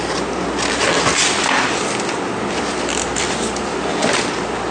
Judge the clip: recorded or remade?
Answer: recorded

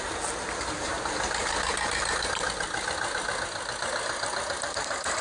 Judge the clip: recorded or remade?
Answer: recorded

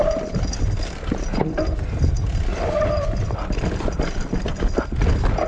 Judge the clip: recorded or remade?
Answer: recorded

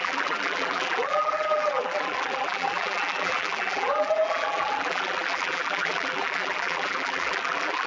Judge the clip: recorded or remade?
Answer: remade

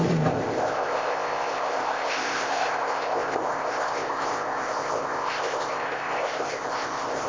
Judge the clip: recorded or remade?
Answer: remade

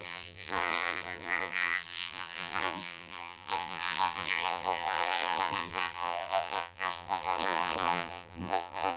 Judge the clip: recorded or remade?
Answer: remade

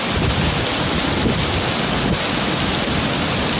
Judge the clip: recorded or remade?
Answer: recorded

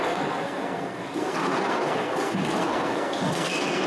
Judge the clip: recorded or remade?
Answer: remade